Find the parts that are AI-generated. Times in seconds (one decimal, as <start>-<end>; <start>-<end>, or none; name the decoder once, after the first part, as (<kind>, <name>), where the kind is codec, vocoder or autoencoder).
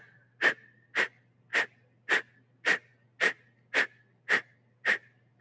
none